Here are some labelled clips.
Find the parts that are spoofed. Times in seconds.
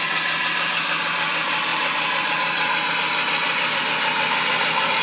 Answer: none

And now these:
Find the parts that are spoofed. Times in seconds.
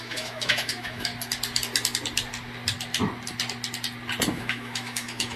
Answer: 0.0-1.1 (autoencoder, DAC-VAE); 4.3-5.4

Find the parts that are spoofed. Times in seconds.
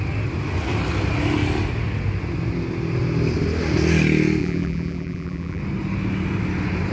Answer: 4.4-5.6 (vocoder, BigVGAN v2)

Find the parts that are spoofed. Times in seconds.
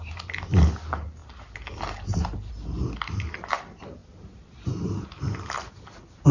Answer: none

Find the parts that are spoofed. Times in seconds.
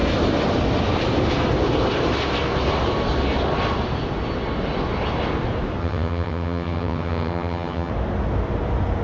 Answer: 5.8-7.9 (vocoder, HiFi-GAN)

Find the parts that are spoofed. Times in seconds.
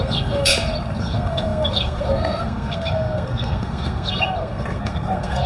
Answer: 0.0-0.5 (codec, SNAC); 1.0-5.5